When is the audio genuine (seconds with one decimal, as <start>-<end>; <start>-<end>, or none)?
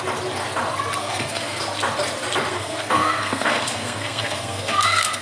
0.0-1.0; 1.6-2.5